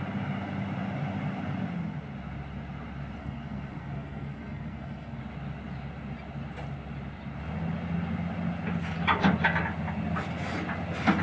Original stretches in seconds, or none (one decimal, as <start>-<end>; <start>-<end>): 0.0-3.2; 5.2-11.2